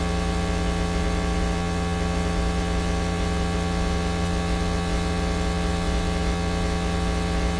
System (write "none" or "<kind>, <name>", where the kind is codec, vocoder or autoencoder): vocoder, WaveNeXt